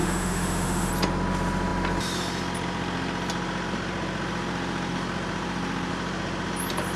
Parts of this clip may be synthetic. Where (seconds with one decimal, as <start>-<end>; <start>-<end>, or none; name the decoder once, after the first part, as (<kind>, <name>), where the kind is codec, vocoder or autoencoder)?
0.0-0.9 (autoencoder, DAC-VAE)